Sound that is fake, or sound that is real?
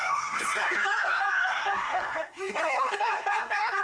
fake